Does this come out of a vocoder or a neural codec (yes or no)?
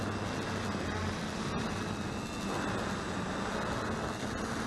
no